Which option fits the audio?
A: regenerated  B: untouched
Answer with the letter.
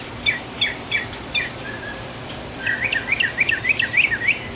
A